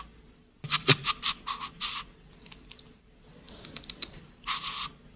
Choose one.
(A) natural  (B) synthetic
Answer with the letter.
A